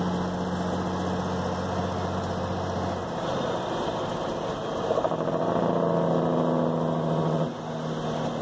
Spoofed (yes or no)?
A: no